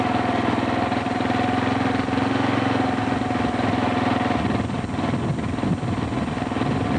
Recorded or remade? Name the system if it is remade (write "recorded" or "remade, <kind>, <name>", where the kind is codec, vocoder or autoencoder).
recorded